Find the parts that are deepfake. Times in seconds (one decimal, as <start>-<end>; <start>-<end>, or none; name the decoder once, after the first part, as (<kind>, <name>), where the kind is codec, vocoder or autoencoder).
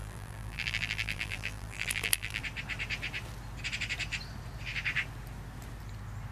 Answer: 0.0-2.4 (vocoder, BigVGAN v2)